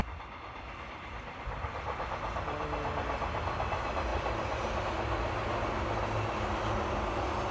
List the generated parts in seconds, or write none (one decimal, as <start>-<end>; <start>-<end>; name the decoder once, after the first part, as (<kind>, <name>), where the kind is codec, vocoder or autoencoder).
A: none